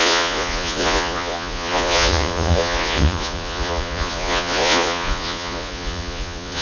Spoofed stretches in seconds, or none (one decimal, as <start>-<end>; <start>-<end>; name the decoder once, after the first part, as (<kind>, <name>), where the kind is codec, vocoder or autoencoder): 0.0-6.6 (vocoder, Vocos)